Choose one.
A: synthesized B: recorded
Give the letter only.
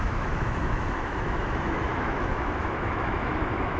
A